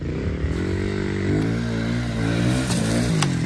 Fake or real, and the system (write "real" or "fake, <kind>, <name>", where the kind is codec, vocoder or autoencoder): real